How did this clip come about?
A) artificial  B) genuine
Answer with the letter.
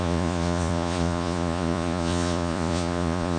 A